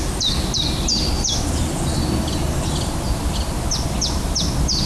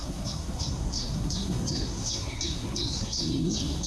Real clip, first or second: first